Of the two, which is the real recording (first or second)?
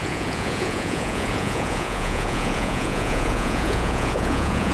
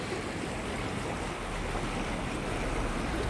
second